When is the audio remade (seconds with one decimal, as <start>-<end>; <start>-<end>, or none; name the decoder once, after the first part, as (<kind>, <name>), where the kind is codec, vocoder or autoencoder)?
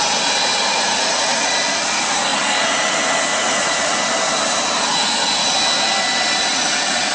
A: 0.7-1.6 (vocoder, Vocos); 3.3-4.0; 6.5-7.1